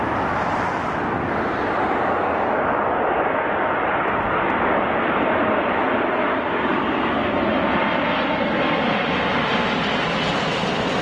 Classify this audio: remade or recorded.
recorded